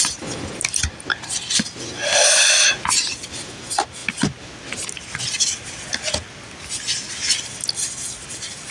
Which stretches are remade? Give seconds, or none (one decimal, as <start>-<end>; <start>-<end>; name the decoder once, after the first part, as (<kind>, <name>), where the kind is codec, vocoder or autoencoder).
none